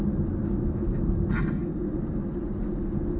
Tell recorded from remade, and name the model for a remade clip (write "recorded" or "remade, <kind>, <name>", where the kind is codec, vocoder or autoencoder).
recorded